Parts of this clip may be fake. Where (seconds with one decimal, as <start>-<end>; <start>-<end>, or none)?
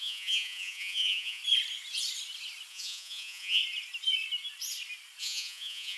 0.0-1.4; 2.7-3.6; 5.2-6.0